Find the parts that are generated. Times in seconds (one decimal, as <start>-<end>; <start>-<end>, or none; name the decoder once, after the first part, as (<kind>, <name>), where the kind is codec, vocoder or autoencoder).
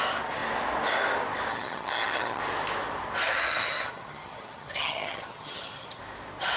1.5-2.4 (vocoder, HiFi-GAN); 3.3-6.0